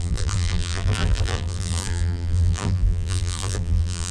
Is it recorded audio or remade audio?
remade